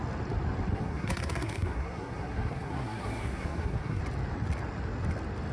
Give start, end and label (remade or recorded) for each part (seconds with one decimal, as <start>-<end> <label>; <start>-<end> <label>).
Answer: 0.0-0.7 recorded; 0.7-4.0 remade; 4.0-5.5 recorded